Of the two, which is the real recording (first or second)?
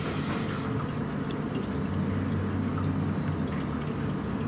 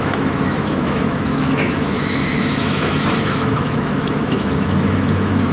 first